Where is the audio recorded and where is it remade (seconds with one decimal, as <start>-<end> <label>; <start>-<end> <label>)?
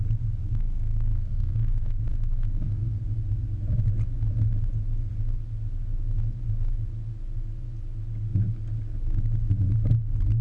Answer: 0.0-0.4 recorded; 0.4-3.0 remade; 3.0-10.4 recorded